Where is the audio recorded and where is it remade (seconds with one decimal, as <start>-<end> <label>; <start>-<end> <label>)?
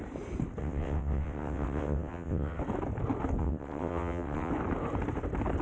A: 0.0-0.6 recorded; 0.6-2.6 remade; 2.6-3.4 recorded; 3.4-4.5 remade; 4.5-5.6 recorded